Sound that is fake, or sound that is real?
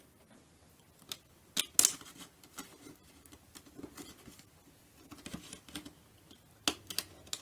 real